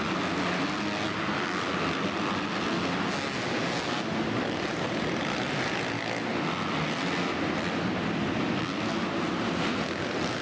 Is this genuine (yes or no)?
yes